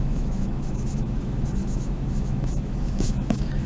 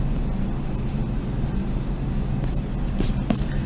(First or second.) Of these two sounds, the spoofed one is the first